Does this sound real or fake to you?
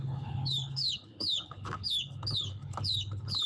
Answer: fake